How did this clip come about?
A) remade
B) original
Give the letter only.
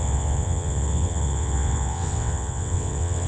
A